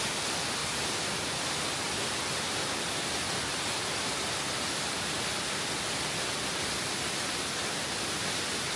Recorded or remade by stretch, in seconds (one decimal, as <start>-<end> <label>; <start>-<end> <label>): 0.0-0.6 recorded; 0.6-5.8 remade; 5.8-8.8 recorded